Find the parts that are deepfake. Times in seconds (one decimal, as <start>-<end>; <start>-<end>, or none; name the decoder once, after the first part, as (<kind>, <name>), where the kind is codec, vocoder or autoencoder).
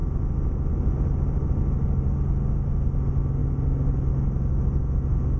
none